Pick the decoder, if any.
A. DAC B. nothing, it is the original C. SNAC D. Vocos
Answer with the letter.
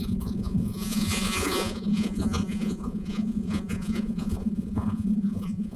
D